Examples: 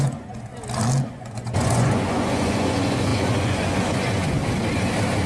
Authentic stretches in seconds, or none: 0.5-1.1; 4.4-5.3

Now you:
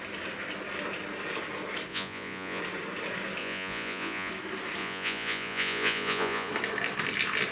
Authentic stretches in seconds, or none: 0.0-1.9; 2.6-3.4; 4.3-4.8; 6.5-7.5

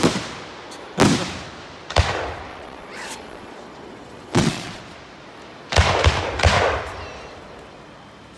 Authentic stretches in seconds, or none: 0.0-2.5; 4.8-8.4

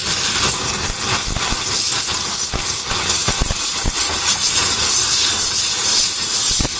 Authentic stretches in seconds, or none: 0.0-6.8